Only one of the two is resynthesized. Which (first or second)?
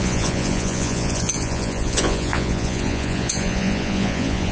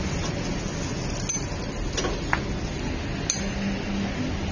first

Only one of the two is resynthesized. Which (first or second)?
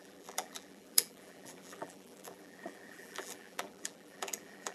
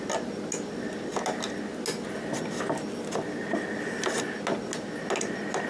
first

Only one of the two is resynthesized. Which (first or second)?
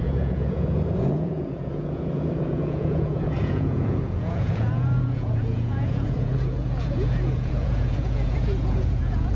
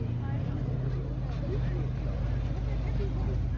first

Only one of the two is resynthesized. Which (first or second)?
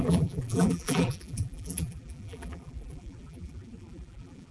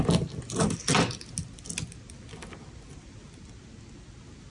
first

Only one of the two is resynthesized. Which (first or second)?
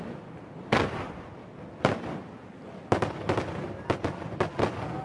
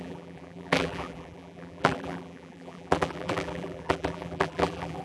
second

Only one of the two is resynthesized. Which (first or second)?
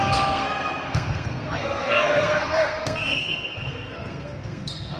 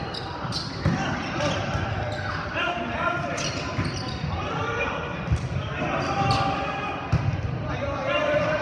first